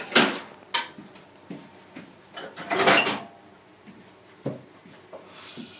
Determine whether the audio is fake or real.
real